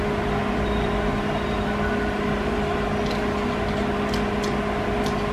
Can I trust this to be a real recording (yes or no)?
yes